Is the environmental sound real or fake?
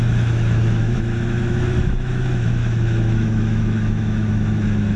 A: fake